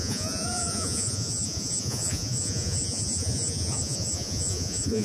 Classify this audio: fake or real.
fake